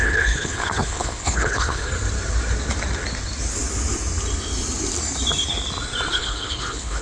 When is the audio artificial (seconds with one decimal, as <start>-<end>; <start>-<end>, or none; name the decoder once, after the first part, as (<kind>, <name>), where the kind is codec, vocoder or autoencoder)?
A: 0.0-1.9 (codec, HILCodec); 6.1-7.0